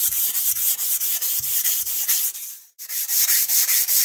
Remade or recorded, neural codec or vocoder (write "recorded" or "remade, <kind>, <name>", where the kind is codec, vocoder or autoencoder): remade, vocoder, BigVGAN v2